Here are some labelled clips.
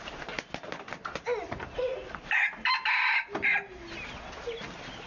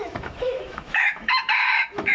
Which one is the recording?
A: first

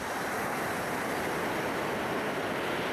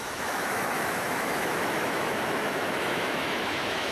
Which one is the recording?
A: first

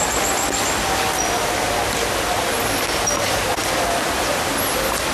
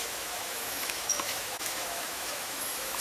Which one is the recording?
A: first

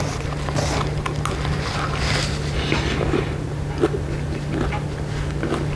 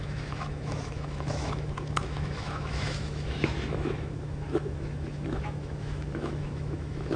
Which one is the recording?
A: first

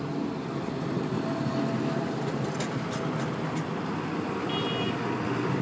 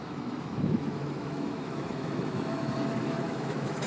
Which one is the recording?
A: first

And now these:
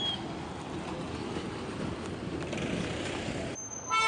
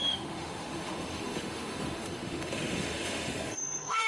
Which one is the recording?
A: first